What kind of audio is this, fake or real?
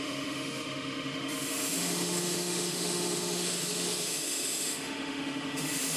fake